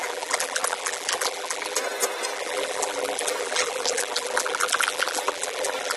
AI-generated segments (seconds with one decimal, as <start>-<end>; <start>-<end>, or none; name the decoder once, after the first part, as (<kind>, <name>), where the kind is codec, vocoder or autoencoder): 0.0-1.8 (vocoder, BigVGAN v2); 2.3-6.0